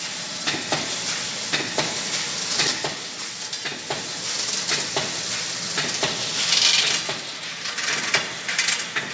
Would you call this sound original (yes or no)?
yes